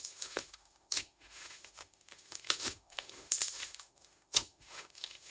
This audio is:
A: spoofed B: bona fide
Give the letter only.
A